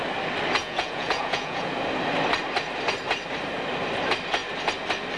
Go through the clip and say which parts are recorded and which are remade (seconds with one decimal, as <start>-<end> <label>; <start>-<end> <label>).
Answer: 0.0-0.6 recorded; 0.6-1.7 remade; 1.7-5.2 recorded